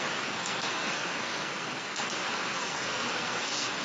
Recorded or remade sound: remade